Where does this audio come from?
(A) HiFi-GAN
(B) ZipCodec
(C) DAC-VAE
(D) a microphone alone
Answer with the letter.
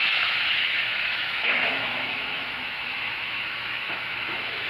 C